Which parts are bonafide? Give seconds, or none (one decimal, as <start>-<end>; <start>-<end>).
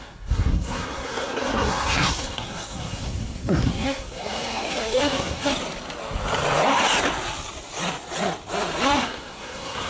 5.5-8.9